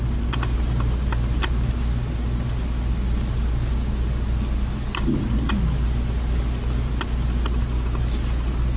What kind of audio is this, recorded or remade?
recorded